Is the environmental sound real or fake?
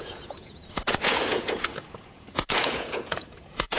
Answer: fake